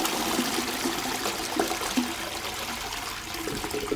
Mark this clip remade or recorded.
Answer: recorded